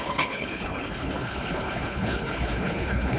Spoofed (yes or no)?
yes